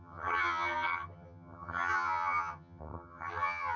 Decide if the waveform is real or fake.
fake